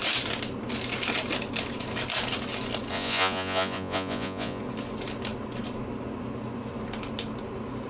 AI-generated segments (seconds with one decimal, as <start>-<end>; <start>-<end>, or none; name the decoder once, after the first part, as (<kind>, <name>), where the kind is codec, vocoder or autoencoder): 2.9-4.6 (vocoder, Vocos)